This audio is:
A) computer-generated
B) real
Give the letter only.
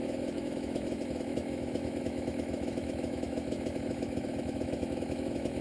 A